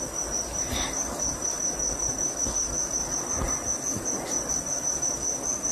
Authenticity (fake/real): fake